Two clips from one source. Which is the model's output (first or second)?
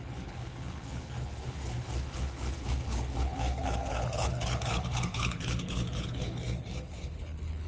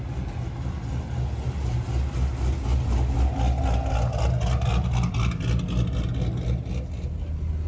first